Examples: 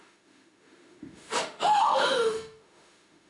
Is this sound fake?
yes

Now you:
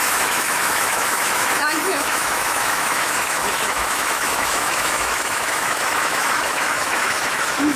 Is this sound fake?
yes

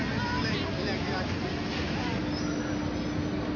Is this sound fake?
no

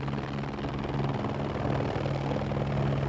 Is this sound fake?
no